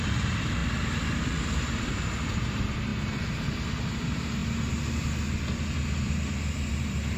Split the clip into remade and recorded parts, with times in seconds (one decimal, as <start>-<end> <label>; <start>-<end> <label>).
0.0-0.6 remade; 0.6-1.4 recorded; 1.4-4.4 remade; 4.4-6.7 recorded; 6.7-7.2 remade